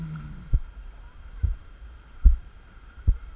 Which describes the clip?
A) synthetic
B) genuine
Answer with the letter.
B